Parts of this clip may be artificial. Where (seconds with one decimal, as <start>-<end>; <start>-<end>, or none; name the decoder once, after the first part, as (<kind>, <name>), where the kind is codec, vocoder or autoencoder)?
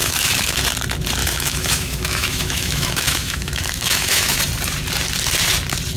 0.0-0.6 (autoencoder, DAC-VAE); 1.2-4.4